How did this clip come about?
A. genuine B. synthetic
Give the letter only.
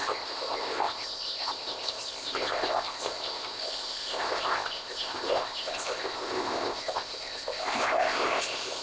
B